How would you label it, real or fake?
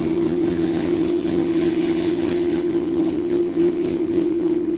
fake